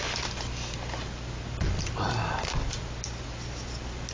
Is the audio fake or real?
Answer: real